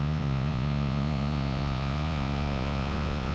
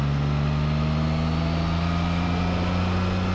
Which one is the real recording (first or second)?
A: second